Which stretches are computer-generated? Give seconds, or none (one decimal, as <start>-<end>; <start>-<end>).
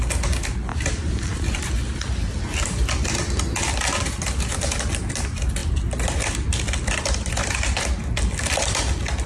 0.7-1.6; 5.6-7.3